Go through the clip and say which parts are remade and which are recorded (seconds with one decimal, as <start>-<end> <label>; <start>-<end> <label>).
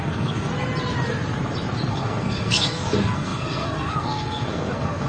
0.0-0.5 remade; 0.5-1.9 recorded; 1.9-5.1 remade